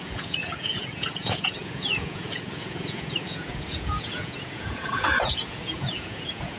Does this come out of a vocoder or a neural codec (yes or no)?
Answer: yes